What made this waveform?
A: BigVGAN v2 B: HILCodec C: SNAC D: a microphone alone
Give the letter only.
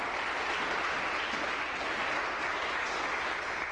D